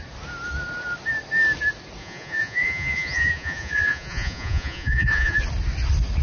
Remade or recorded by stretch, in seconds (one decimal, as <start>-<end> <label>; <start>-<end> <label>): 0.0-2.0 recorded; 2.0-5.4 remade; 5.4-6.2 recorded